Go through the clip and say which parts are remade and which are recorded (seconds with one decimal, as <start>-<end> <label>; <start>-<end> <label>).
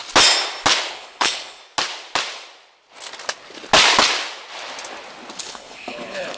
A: 0.0-0.9 recorded; 0.9-1.6 remade; 1.6-5.4 recorded; 5.4-6.4 remade